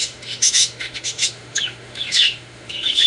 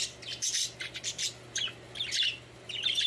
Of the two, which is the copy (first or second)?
first